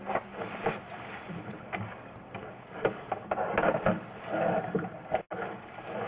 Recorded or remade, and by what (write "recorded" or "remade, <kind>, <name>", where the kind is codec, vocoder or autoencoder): recorded